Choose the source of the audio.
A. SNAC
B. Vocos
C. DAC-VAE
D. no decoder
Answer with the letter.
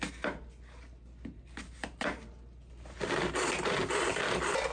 D